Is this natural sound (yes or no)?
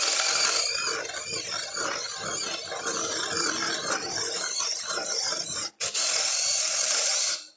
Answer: yes